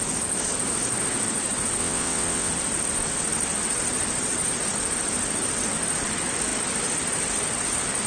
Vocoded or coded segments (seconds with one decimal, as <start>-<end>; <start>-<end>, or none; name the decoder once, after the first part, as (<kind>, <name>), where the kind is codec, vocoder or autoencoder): 1.8-2.5 (vocoder, WaveNeXt)